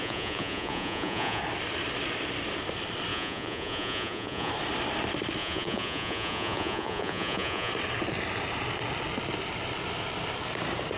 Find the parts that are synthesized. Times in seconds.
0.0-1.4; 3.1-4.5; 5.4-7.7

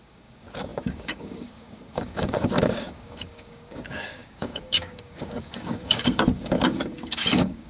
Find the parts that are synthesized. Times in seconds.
0.0-7.7

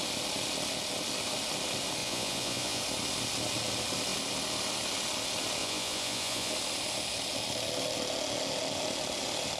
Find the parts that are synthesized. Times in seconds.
2.0-2.8; 5.6-6.5

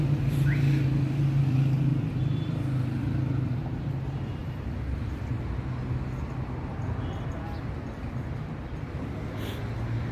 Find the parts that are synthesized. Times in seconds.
none

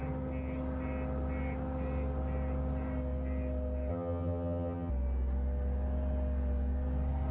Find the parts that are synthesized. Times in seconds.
3.9-4.9